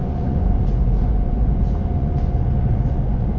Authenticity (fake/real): fake